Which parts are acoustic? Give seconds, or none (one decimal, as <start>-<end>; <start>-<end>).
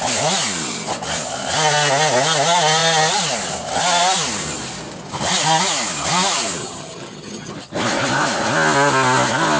0.0-6.6; 7.5-9.6